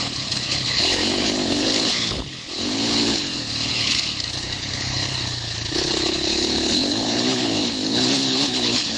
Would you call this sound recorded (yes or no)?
no